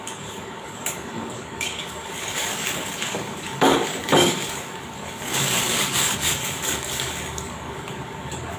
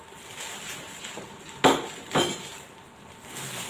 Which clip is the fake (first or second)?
first